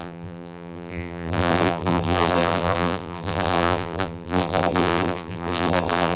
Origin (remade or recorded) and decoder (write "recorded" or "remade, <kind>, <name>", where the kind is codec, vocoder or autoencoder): remade, vocoder, BigVGAN v2